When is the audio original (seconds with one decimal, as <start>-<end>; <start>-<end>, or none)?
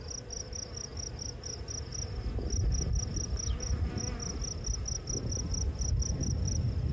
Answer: 0.0-6.9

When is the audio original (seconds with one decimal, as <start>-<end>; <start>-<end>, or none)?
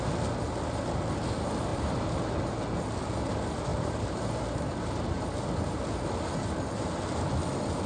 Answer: 0.0-1.7; 2.5-3.7; 6.0-7.9